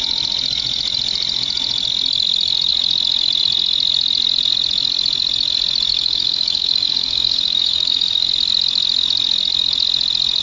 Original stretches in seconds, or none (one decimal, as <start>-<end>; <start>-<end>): 0.0-5.9; 8.3-10.4